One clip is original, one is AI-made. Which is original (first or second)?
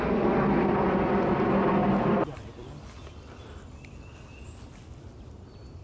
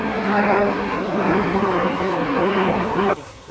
first